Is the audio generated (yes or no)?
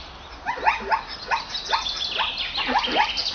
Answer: no